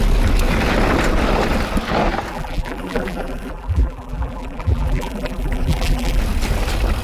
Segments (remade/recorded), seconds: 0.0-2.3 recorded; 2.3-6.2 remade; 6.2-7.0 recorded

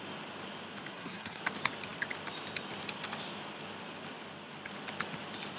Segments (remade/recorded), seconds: 0.0-0.9 recorded; 0.9-1.4 remade; 1.4-5.6 recorded

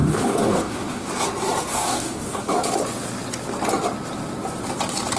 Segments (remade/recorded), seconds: 0.0-1.1 remade; 1.1-1.7 recorded; 1.7-2.4 remade; 2.4-5.2 recorded